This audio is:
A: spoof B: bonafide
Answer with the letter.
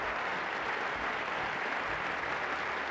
B